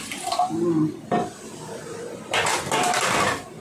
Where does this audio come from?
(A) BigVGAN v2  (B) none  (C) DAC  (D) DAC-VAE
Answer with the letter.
B